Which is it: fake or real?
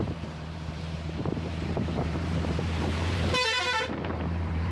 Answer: fake